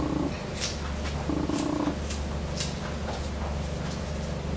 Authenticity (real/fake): real